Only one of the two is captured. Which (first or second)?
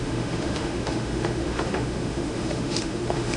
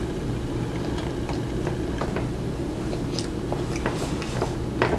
second